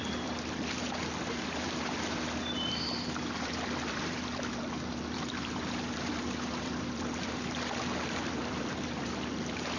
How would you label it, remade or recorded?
remade